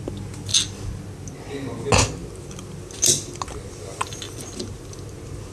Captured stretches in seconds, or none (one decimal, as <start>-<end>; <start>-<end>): 0.0-5.5